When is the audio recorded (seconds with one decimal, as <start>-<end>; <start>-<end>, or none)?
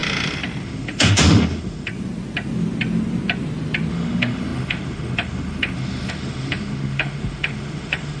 0.0-0.6; 1.9-3.9